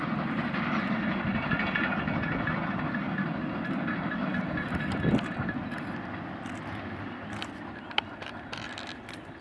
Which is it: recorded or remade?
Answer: recorded